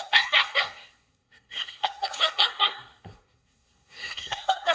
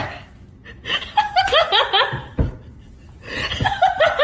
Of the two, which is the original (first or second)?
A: second